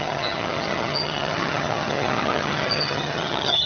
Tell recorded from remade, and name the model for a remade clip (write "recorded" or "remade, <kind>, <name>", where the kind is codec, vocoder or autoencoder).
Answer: remade, vocoder, HiFi-GAN